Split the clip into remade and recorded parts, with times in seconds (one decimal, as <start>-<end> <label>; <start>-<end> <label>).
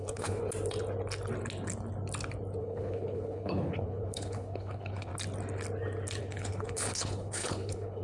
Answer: 0.0-0.4 remade; 0.4-2.6 recorded; 2.6-5.1 remade; 5.1-6.2 recorded; 6.2-8.0 remade